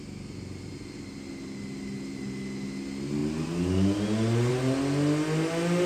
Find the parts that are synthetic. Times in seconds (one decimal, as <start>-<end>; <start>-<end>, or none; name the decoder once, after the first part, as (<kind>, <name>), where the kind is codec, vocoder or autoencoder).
none